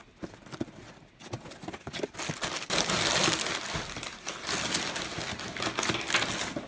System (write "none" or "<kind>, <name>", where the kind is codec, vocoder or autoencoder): none